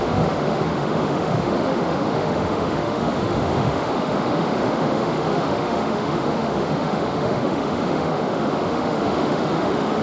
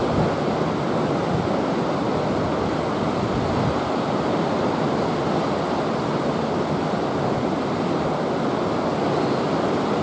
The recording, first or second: second